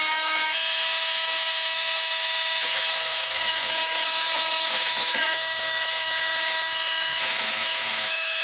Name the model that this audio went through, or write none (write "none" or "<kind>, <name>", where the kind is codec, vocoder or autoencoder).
autoencoder, DAC-VAE